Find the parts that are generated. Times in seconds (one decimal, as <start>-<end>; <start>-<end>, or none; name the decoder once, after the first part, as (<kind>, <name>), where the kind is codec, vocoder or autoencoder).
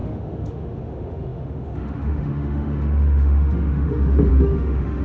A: 0.0-5.0 (autoencoder, DAC-VAE)